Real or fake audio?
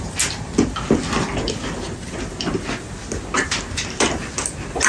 real